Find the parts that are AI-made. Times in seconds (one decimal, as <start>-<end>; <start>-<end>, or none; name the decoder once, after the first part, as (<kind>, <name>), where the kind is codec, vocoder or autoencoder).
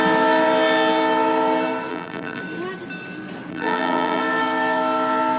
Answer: 1.9-2.4 (vocoder, BigVGAN v2); 3.5-4.2